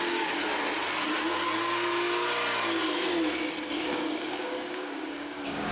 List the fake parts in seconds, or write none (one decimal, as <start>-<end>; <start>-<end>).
0.0-0.4; 3.8-5.7